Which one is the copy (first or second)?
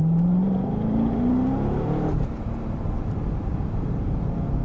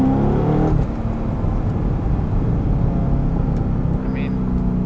first